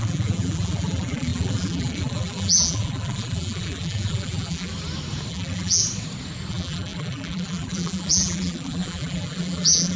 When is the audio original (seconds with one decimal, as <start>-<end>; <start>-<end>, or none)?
4.7-5.3; 5.8-6.5